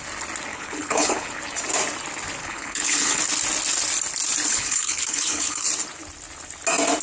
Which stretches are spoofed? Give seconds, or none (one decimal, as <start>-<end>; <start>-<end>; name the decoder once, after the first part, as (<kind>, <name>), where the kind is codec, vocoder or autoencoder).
0.5-1.4 (codec, HILCodec); 2.4-3.2; 4.5-5.7